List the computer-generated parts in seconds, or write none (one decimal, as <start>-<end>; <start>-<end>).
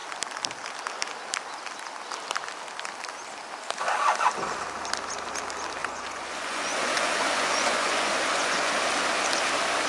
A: 5.8-8.7